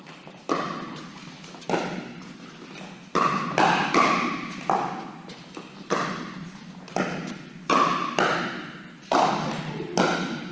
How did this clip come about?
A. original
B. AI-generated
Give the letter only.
A